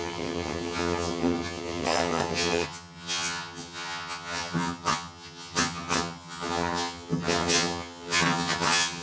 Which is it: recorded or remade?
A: remade